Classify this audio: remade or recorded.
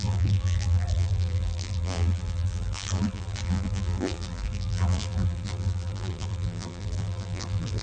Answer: remade